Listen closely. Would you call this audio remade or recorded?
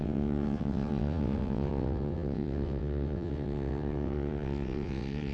remade